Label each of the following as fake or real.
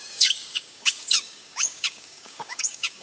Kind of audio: fake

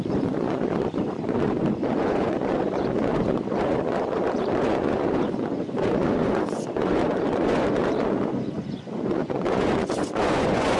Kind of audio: fake